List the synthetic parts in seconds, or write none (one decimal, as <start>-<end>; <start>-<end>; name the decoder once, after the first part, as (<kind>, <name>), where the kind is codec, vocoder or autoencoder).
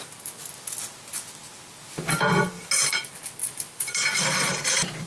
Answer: 3.4-5.1 (vocoder, BigVGAN v2)